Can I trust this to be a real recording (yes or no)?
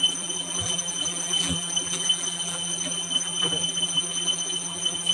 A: no